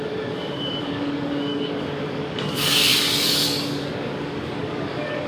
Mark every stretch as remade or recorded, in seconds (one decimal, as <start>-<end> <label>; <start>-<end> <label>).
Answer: 0.0-5.3 remade